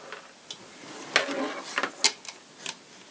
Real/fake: real